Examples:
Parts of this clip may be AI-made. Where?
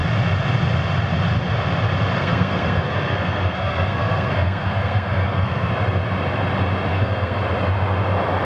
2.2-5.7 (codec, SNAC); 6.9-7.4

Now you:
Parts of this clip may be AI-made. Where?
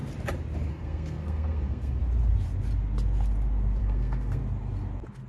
0.7-2.0 (codec, SNAC); 3.8-4.4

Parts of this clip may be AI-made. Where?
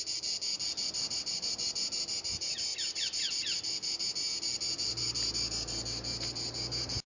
none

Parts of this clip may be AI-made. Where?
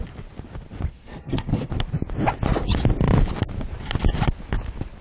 0.9-1.7 (codec, SNAC)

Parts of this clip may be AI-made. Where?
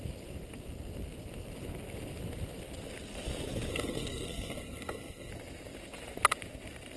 3.7-5.3 (codec, SNAC)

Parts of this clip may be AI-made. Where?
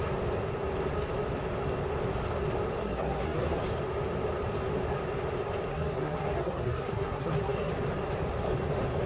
2.8-3.6 (codec, SNAC); 5.7-7.7